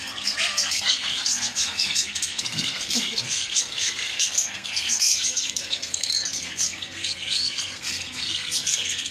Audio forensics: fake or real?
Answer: fake